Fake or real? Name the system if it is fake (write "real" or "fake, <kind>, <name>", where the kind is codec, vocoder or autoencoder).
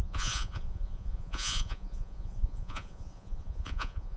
fake, vocoder, Vocos